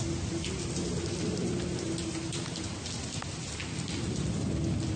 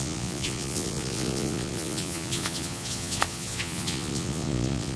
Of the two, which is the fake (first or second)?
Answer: second